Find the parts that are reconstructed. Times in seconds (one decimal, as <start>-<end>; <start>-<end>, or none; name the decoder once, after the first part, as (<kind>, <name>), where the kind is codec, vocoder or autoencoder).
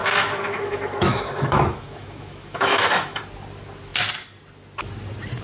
0.0-3.2 (autoencoder, DAC-VAE)